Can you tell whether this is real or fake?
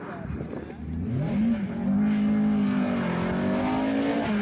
real